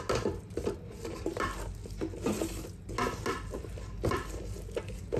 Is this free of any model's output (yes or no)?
yes